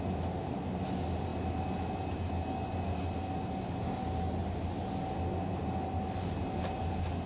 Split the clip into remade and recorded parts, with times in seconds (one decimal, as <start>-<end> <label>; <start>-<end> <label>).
0.0-7.3 recorded